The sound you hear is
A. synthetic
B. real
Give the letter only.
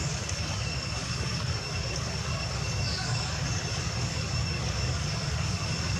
A